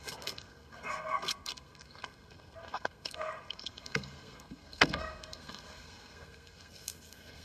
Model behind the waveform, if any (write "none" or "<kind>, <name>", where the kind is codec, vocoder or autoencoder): codec, SNAC